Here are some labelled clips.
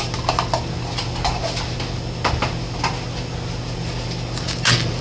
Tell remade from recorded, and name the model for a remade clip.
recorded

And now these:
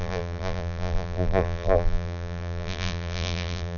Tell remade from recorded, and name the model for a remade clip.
remade, vocoder, BigVGAN v2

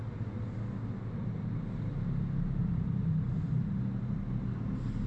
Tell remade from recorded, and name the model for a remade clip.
recorded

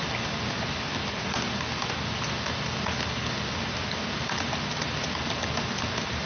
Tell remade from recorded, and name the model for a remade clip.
recorded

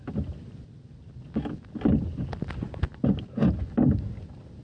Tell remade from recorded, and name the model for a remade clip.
recorded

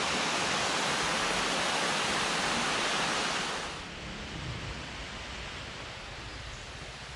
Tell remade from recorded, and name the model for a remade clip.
recorded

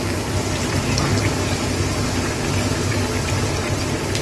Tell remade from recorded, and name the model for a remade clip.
recorded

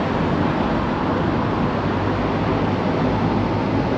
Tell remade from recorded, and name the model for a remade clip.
recorded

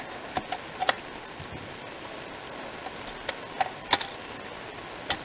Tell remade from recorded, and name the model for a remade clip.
recorded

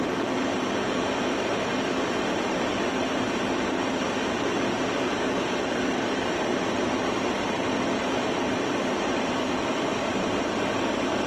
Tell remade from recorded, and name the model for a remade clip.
remade, vocoder, BigVGAN v2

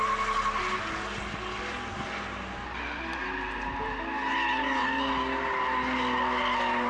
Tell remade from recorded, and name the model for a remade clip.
recorded